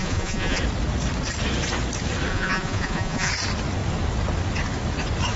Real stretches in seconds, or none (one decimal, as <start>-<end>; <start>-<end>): 0.6-2.3; 3.3-5.4